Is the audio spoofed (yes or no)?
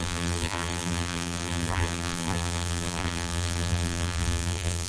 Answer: yes